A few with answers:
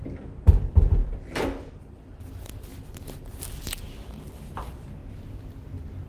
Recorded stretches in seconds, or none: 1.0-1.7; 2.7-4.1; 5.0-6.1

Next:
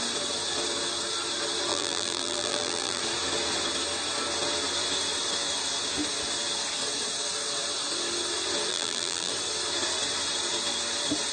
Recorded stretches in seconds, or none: 0.0-1.7; 3.0-8.7; 9.3-11.3